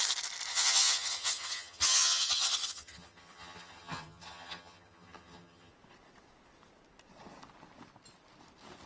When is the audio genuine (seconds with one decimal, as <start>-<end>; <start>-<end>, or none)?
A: 0.0-0.5; 5.7-8.9